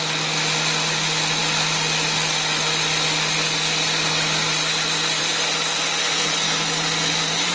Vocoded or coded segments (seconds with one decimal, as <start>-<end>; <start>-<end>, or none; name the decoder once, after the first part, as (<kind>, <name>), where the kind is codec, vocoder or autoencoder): none